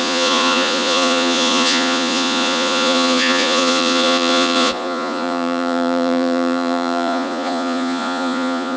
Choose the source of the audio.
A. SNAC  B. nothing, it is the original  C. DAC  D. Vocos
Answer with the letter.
D